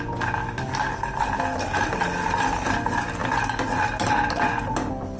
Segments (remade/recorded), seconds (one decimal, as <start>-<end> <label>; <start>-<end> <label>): 0.0-5.2 recorded